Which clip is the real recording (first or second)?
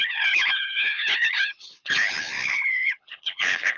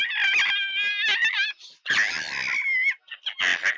second